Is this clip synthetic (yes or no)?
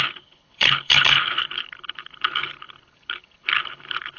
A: yes